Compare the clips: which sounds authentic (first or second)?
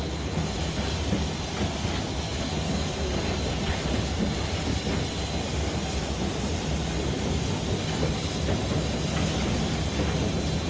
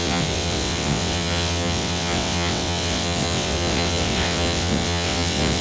first